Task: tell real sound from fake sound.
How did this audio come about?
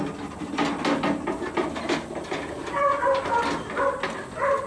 real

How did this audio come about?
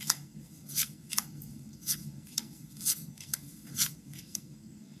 fake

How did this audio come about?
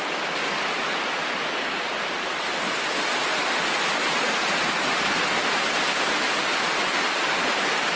real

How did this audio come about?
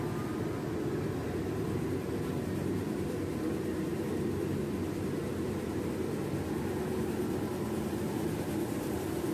real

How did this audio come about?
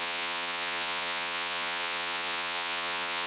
fake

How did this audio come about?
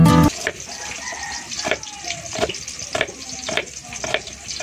real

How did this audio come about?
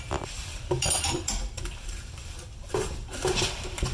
fake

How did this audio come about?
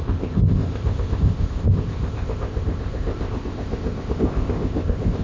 fake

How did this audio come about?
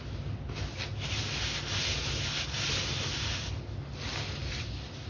real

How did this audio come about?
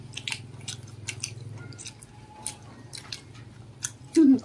real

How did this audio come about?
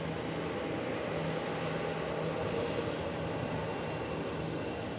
real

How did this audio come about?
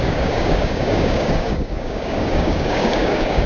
fake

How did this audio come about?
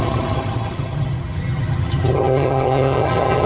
fake